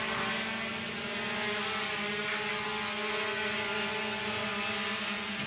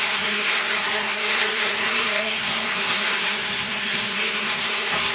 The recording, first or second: first